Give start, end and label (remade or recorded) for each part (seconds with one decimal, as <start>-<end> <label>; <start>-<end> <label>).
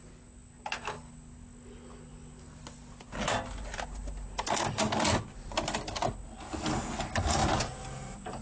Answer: 0.0-7.4 recorded; 7.4-8.4 remade